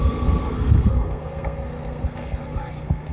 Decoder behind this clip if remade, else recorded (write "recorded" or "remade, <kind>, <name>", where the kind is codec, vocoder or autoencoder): remade, codec, SNAC